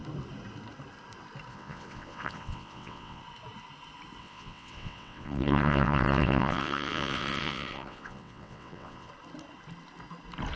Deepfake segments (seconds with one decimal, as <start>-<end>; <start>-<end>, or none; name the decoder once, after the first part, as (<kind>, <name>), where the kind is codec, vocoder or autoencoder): 1.5-3.2 (vocoder, WaveNeXt); 4.2-9.1

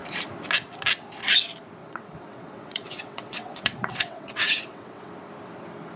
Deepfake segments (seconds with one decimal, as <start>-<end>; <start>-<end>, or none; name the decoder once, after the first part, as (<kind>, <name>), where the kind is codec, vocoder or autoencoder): 1.8-5.1 (vocoder, WaveNeXt)